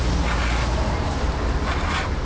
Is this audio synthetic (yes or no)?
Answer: no